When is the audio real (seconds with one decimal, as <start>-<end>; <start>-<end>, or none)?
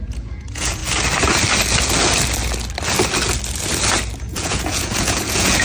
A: 0.8-4.2